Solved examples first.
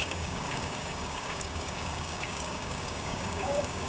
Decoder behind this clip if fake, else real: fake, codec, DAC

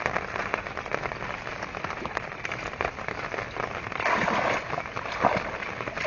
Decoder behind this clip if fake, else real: real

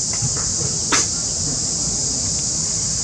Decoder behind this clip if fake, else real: real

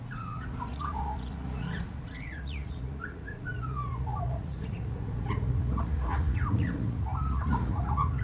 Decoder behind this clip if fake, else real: fake, vocoder, Vocos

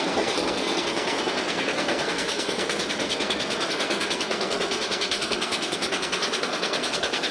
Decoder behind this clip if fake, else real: fake, codec, SNAC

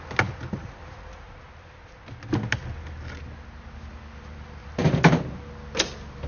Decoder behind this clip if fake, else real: real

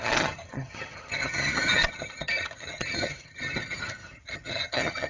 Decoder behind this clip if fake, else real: fake, vocoder, HiFi-GAN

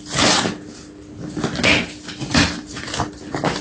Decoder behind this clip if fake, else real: real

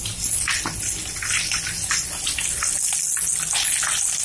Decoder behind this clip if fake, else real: real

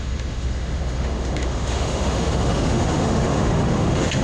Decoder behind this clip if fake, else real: fake, autoencoder, DAC-VAE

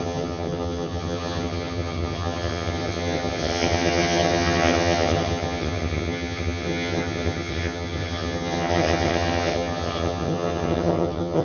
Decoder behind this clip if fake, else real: fake, vocoder, HiFi-GAN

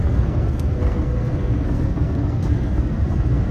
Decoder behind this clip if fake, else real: fake, codec, SNAC